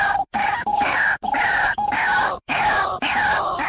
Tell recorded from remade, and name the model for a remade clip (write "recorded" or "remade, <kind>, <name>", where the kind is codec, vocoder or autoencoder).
remade, codec, DAC